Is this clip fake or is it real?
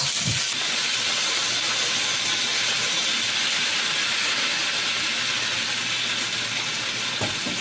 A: real